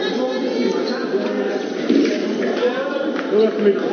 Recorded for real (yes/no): yes